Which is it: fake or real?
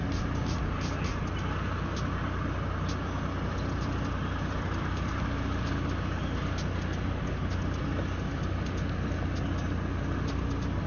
real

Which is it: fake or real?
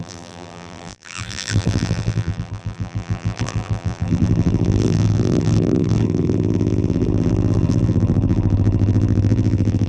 fake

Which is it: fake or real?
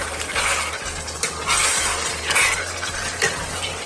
real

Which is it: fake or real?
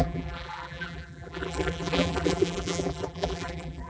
fake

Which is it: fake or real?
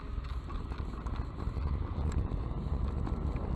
fake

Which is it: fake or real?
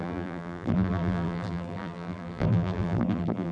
fake